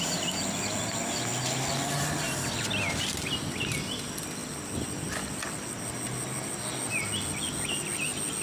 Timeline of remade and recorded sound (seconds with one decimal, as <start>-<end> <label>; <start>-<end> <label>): 0.0-8.4 recorded